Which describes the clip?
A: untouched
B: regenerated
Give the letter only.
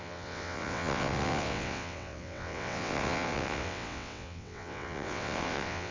B